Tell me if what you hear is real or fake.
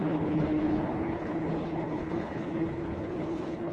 fake